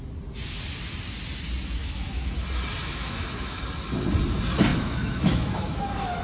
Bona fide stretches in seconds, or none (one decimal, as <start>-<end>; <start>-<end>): 0.0-1.8; 2.3-2.8; 3.6-4.7